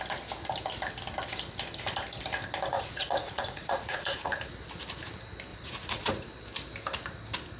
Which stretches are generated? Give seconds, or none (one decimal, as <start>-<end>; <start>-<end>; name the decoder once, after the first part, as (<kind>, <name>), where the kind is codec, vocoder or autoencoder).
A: 2.7-4.4 (vocoder, Vocos); 5.5-6.1